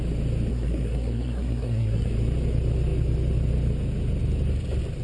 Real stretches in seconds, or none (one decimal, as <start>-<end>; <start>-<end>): 0.0-0.5; 2.1-5.0